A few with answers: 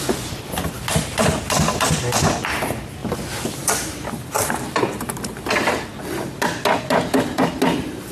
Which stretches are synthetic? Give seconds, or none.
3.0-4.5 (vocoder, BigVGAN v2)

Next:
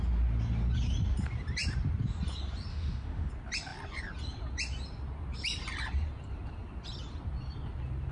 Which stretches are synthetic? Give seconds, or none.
2.7-3.3 (autoencoder, DAC-VAE)

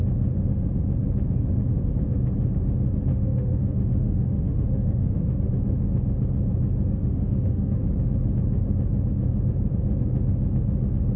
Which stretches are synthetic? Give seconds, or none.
3.1-5.4 (autoencoder, DAC-VAE); 7.0-7.8

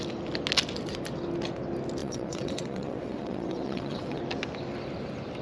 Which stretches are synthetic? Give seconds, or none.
2.0-4.2 (vocoder, WaveNeXt)

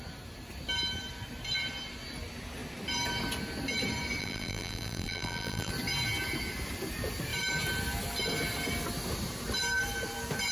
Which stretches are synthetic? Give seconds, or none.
4.2-5.7 (vocoder, BigVGAN v2)

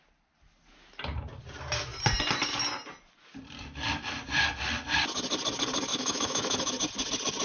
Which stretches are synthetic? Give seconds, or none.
5.9-6.7 (autoencoder, DAC-VAE)

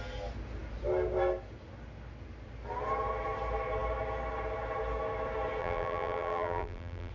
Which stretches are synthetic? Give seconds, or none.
5.6-7.1 (vocoder, BigVGAN v2)